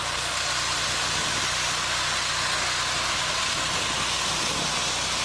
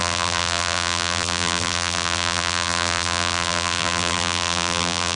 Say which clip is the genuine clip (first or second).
first